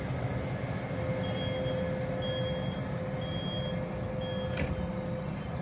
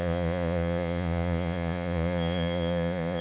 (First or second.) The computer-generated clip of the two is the second